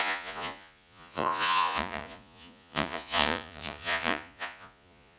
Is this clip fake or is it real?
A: fake